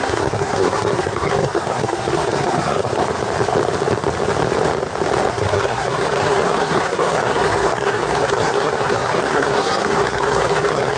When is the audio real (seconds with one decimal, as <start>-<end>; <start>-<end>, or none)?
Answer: 3.0-5.3